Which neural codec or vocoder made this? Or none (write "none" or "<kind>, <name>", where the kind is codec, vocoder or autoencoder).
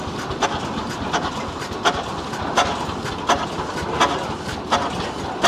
none